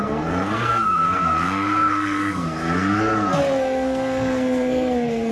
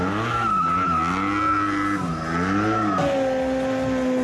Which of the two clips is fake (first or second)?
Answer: first